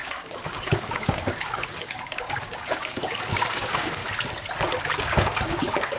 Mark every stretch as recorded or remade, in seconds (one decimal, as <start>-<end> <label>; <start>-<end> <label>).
0.0-4.0 remade; 4.0-5.0 recorded; 5.0-6.0 remade